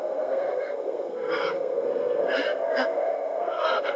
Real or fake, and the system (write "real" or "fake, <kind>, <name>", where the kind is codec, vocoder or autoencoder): fake, codec, SNAC